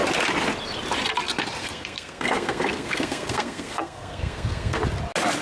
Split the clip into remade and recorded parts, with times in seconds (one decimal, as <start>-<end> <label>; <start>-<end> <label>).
0.0-1.6 recorded; 1.6-4.8 remade; 4.8-5.4 recorded